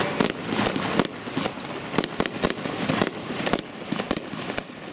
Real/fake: real